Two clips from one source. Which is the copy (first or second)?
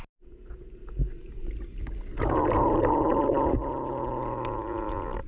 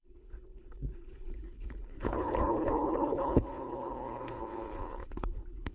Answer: second